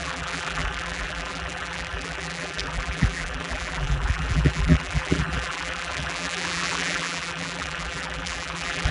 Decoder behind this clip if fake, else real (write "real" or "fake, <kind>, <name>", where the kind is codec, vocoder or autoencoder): fake, vocoder, BigVGAN v2